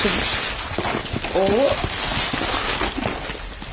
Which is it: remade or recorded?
recorded